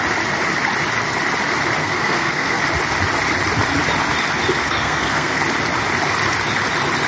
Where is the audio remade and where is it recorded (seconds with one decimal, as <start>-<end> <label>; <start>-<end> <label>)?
0.0-1.8 recorded; 1.8-2.6 remade; 2.6-4.6 recorded; 4.6-5.4 remade; 5.4-7.1 recorded